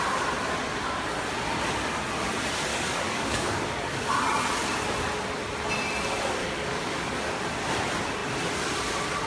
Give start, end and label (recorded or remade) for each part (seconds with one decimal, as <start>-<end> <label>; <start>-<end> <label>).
0.0-2.7 recorded; 2.7-4.1 remade; 4.1-6.4 recorded; 6.4-7.4 remade; 7.4-9.3 recorded